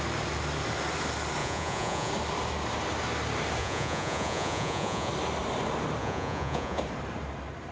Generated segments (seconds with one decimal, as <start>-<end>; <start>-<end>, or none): 1.4-2.1; 3.6-5.1; 6.0-6.8